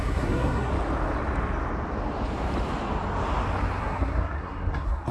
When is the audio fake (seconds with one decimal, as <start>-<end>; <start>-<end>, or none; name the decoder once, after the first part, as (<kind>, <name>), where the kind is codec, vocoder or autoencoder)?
0.0-0.7 (codec, SNAC); 3.8-5.1